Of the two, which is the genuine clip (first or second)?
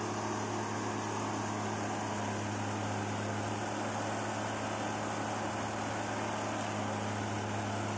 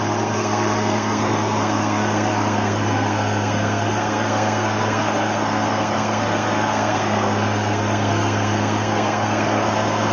first